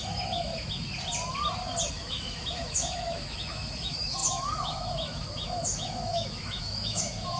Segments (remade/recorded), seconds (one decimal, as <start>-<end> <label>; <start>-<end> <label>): 0.0-0.5 remade; 0.5-1.9 recorded; 1.9-7.4 remade